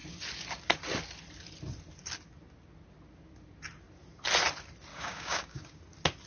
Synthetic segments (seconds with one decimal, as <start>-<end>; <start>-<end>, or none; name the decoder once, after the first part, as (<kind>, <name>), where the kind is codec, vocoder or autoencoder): 4.9-5.8 (codec, DAC)